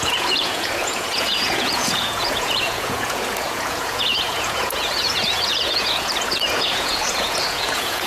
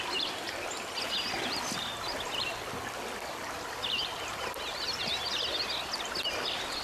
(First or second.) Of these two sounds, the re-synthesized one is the first